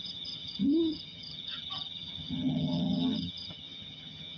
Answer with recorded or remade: remade